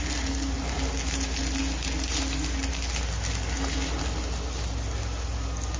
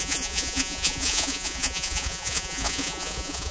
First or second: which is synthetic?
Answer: second